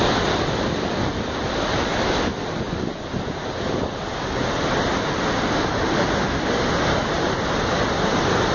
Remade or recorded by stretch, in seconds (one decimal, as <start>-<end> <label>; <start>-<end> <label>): 0.0-8.5 recorded